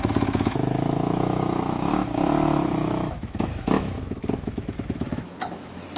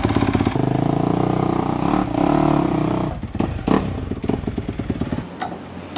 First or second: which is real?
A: second